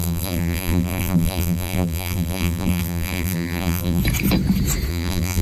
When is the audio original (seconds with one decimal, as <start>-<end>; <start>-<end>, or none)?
4.0-4.9